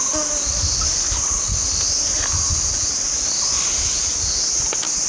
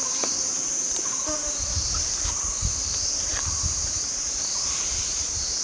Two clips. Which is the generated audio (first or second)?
second